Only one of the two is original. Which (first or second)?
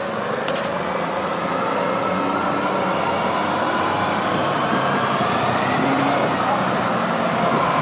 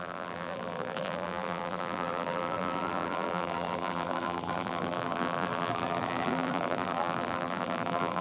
first